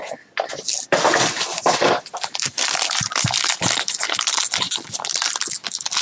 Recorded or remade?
recorded